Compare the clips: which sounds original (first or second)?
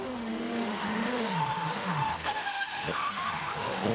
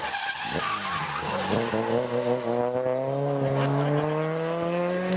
second